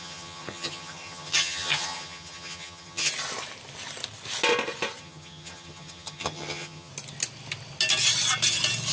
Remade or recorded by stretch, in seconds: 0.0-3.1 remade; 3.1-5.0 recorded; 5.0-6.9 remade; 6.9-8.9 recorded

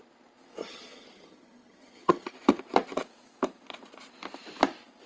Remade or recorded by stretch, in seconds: 0.0-0.6 recorded; 0.6-2.3 remade; 2.3-5.1 recorded

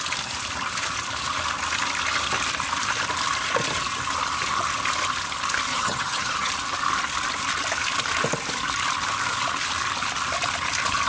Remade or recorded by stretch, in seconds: 0.0-5.7 recorded; 5.7-6.5 remade; 6.5-11.1 recorded

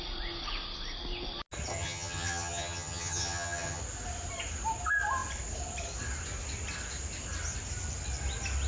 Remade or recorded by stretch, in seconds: 0.0-1.7 recorded; 1.7-3.8 remade; 3.8-8.7 recorded